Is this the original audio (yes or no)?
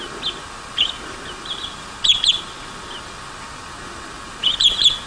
yes